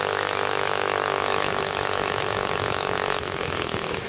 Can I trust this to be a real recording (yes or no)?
no